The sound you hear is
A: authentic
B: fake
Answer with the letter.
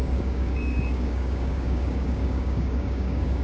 B